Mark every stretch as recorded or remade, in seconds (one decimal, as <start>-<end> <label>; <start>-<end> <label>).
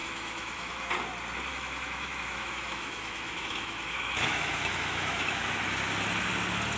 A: 0.0-0.9 remade; 0.9-1.5 recorded; 1.5-5.6 remade; 5.6-6.8 recorded